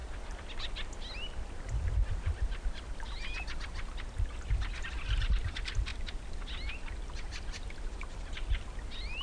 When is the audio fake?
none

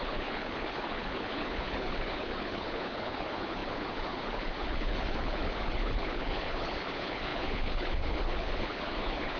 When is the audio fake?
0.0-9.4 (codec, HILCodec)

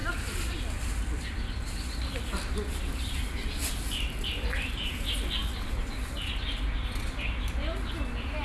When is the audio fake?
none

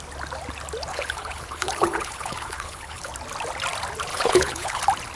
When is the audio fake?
0.9-3.1 (codec, HILCodec); 4.1-4.8

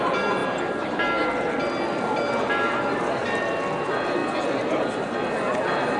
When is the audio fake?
none

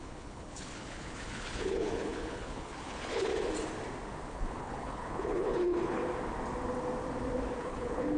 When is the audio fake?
0.0-3.3 (codec, HILCodec); 4.3-6.0; 7.6-8.2

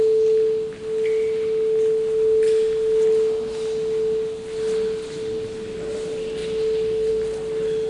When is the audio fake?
none